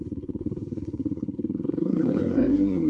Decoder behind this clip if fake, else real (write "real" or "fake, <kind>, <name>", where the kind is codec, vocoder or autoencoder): fake, codec, SNAC